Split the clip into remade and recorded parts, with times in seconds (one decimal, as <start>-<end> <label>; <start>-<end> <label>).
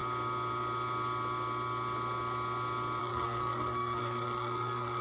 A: 0.0-3.0 recorded; 3.0-5.0 remade